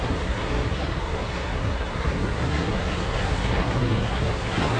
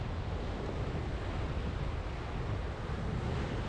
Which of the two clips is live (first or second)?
second